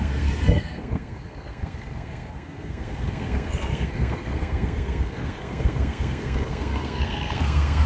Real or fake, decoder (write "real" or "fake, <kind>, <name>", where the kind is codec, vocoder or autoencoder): fake, codec, SNAC